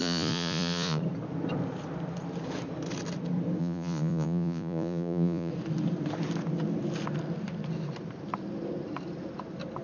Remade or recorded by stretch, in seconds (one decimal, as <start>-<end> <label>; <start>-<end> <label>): 0.0-1.0 remade; 1.0-3.6 recorded; 3.6-5.5 remade; 5.5-9.8 recorded